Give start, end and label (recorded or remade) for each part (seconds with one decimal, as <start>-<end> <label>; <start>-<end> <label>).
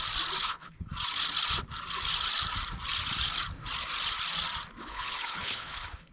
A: 0.0-0.4 recorded; 0.4-0.9 remade; 0.9-4.8 recorded; 4.8-6.1 remade